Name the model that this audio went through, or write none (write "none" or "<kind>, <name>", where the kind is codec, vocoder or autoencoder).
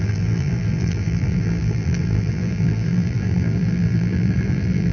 vocoder, BigVGAN v2